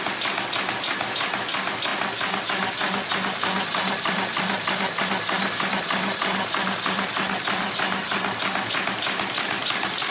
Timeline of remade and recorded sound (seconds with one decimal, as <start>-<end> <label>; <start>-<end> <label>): 0.0-10.1 recorded